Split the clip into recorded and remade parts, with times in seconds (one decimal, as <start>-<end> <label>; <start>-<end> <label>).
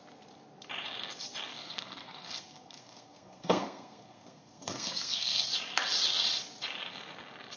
0.0-1.5 recorded; 1.5-5.5 remade; 5.5-7.6 recorded